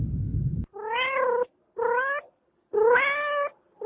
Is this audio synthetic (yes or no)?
no